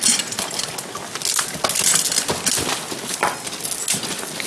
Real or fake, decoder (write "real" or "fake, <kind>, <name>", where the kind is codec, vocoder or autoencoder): real